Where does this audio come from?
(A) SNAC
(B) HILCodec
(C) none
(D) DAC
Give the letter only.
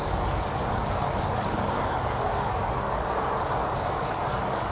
D